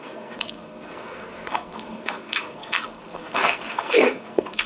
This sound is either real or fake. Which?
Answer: fake